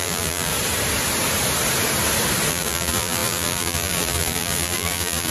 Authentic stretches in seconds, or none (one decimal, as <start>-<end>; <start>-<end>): 0.5-2.5